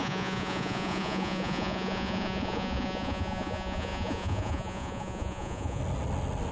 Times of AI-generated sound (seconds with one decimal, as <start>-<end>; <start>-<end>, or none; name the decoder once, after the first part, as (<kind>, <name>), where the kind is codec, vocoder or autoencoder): 0.0-5.8 (vocoder, Vocos)

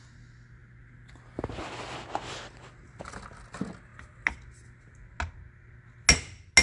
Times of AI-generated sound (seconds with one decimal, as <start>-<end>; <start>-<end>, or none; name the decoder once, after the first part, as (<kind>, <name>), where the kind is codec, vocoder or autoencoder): none

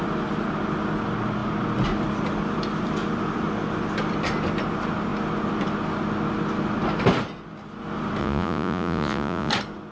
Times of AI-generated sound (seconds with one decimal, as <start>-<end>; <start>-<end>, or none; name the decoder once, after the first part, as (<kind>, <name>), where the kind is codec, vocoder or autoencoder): 8.2-9.5 (vocoder, Vocos)

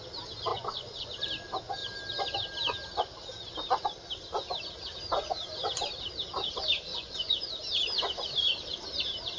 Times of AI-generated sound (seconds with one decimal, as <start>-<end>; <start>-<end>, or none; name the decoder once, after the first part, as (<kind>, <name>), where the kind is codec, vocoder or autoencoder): 0.5-1.1 (vocoder, Vocos); 6.9-7.5